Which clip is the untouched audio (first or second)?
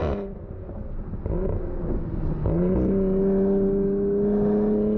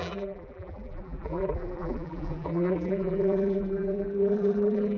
first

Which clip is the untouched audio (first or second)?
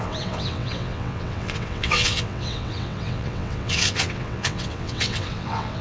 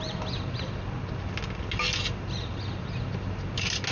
second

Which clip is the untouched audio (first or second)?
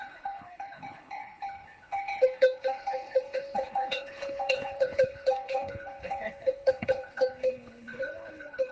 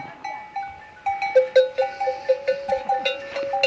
second